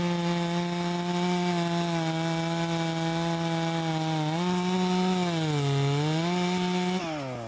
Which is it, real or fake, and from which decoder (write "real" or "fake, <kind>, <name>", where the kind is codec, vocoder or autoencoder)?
real